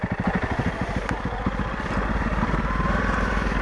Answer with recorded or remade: recorded